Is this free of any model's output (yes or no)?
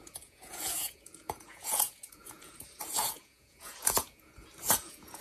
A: no